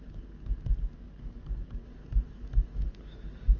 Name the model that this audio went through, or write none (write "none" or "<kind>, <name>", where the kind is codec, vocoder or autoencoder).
codec, DAC